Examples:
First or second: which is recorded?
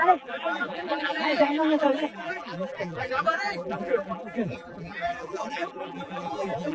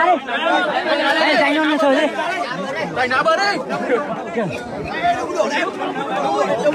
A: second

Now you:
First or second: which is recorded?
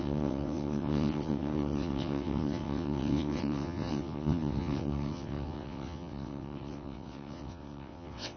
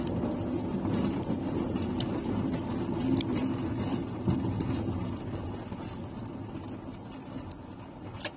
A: second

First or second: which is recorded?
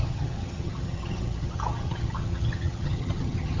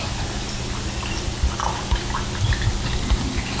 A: second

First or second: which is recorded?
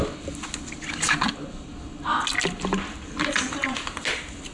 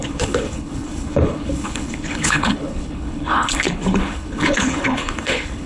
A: first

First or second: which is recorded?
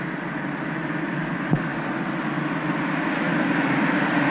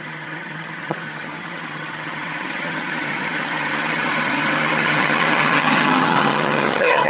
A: first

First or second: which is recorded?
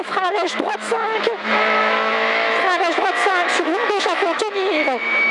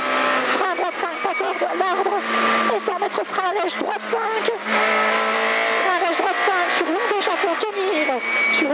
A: second